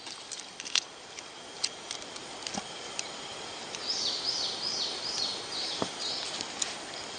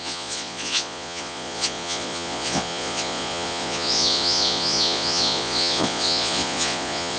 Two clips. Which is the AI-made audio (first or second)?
second